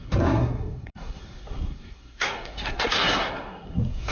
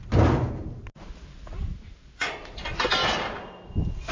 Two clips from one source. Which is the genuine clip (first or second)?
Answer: second